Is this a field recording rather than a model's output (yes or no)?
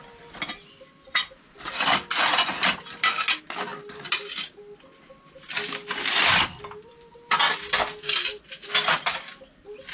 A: yes